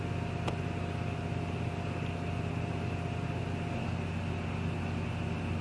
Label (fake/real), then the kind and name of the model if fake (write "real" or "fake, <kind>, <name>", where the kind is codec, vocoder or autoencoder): real